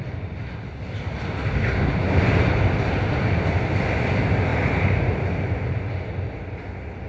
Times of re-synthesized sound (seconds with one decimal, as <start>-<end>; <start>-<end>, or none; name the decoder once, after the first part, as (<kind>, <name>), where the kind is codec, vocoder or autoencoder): none